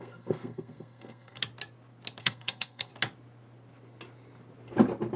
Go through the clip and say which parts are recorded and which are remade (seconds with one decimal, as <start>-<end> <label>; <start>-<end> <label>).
0.0-1.4 remade; 1.4-2.2 recorded; 2.2-2.9 remade; 2.9-5.2 recorded